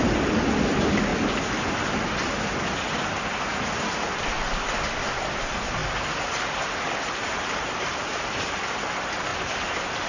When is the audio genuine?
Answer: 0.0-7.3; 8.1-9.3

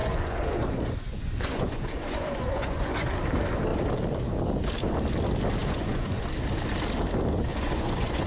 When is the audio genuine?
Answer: 2.9-5.6; 6.2-7.5

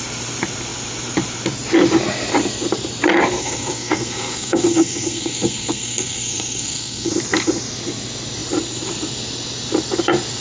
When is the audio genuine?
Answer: 0.0-3.4; 7.1-10.4

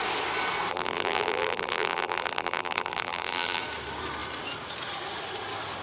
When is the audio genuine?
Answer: 0.0-0.7; 3.6-5.8

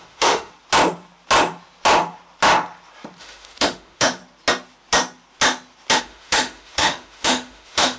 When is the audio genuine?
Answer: 0.5-3.2; 4.2-6.0

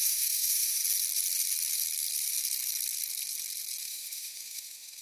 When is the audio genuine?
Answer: 0.8-3.8